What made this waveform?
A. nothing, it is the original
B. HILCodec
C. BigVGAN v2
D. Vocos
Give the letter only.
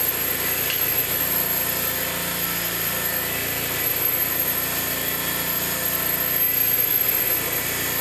A